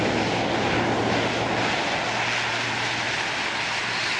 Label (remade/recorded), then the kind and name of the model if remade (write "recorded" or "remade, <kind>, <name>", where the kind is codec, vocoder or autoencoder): recorded